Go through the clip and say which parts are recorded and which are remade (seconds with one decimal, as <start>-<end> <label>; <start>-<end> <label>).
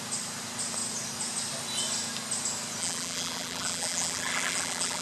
0.0-2.8 recorded; 2.8-5.0 remade